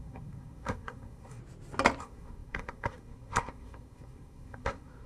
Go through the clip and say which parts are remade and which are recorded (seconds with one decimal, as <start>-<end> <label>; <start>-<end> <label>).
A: 0.0-1.4 remade; 1.4-2.0 recorded; 2.0-5.1 remade